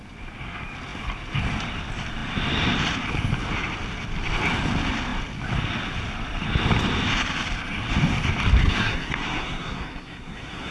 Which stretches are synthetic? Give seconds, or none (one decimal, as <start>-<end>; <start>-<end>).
8.6-10.7